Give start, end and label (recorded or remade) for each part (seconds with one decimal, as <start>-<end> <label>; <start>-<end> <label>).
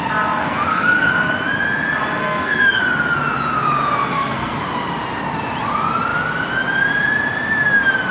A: 0.0-0.4 recorded; 0.4-1.1 remade; 1.1-2.2 recorded; 2.2-2.8 remade; 2.8-4.1 recorded; 4.1-4.6 remade; 4.6-8.1 recorded